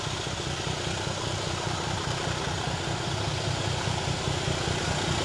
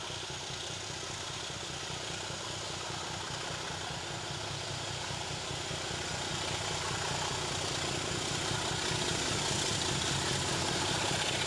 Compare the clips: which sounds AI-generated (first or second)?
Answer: first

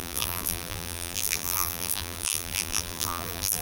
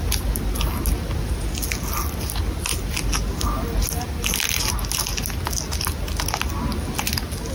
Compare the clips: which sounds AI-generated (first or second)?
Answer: first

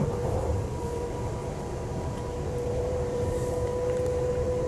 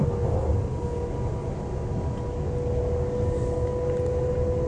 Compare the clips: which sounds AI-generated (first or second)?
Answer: first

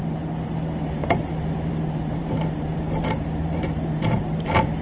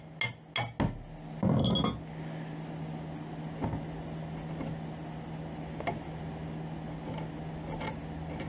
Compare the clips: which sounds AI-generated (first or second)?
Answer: first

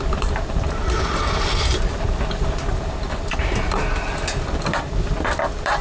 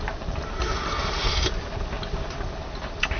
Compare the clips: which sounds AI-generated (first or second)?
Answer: first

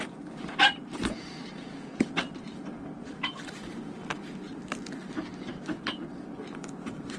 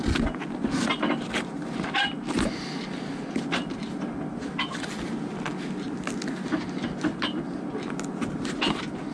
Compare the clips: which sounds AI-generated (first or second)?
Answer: first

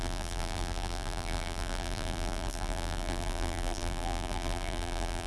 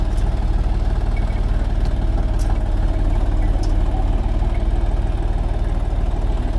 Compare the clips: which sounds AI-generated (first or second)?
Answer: first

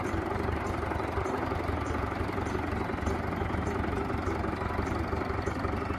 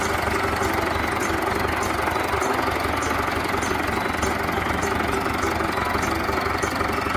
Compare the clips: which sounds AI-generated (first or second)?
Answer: first